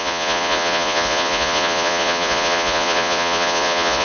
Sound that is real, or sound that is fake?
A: fake